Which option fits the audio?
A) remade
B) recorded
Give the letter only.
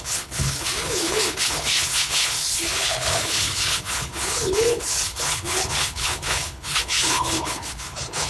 A